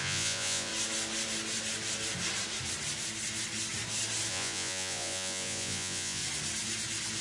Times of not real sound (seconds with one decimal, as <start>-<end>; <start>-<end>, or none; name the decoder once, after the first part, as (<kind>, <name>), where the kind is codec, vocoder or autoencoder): 0.0-0.7 (vocoder, Vocos); 4.3-6.2